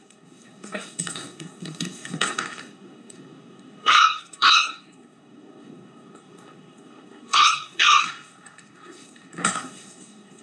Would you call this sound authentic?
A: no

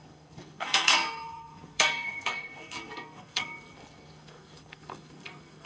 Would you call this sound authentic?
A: no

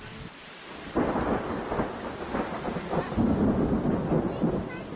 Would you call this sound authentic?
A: yes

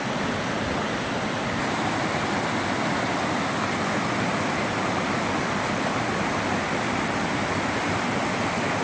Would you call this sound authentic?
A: yes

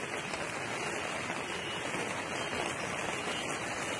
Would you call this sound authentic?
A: yes